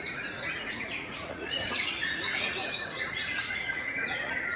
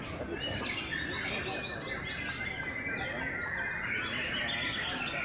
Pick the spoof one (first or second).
first